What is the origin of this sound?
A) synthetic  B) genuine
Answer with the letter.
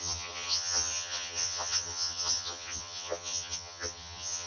A